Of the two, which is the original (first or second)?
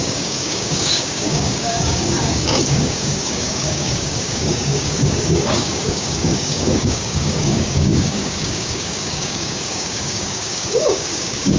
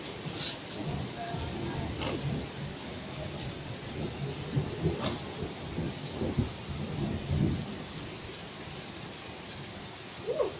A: second